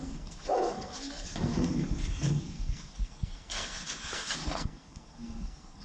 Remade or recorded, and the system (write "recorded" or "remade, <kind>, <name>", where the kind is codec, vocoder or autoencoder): remade, codec, SNAC